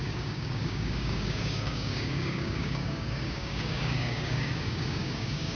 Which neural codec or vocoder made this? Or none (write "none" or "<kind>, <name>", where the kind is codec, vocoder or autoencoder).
codec, DAC